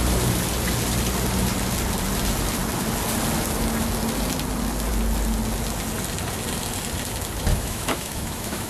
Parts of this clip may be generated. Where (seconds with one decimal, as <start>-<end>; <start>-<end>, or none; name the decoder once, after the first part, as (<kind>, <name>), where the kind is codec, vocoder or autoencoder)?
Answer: 7.5-8.7 (autoencoder, DAC-VAE)